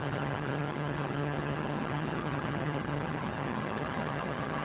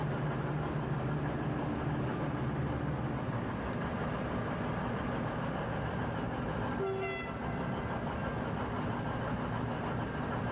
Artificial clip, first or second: first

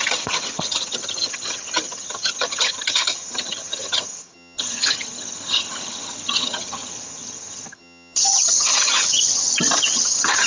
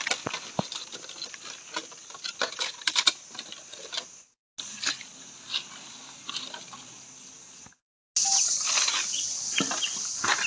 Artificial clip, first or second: first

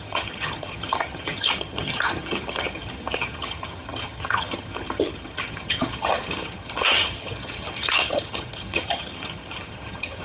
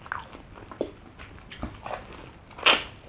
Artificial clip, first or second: first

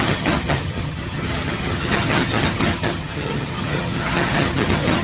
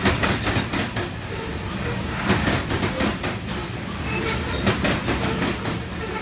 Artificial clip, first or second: first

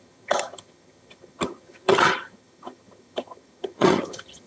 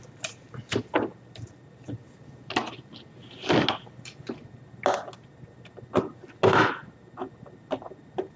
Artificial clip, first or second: first